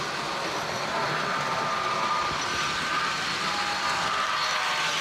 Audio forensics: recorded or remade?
recorded